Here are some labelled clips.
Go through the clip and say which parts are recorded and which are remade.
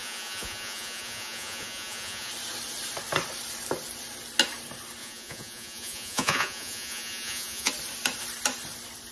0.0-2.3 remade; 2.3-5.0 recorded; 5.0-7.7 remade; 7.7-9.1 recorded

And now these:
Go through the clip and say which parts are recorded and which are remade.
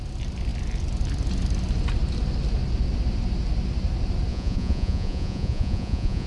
0.0-4.3 recorded; 4.3-6.3 remade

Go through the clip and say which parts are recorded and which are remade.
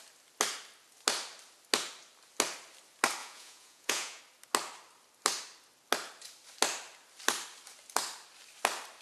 0.0-3.2 recorded; 3.2-4.2 remade; 4.2-9.0 recorded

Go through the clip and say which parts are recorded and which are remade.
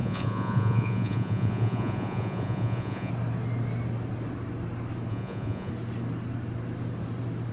0.0-3.1 remade; 3.1-5.1 recorded; 5.1-5.7 remade; 5.7-7.5 recorded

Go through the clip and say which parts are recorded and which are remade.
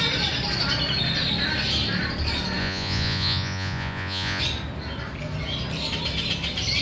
0.0-2.6 recorded; 2.6-4.4 remade; 4.4-6.8 recorded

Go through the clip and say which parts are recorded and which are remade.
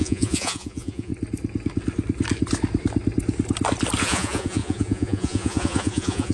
0.0-1.1 remade; 1.1-4.0 recorded; 4.0-6.3 remade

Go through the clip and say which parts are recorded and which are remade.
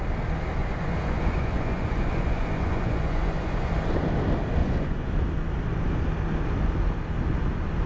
0.0-0.6 recorded; 0.6-3.7 remade; 3.7-4.6 recorded; 4.6-5.1 remade; 5.1-7.9 recorded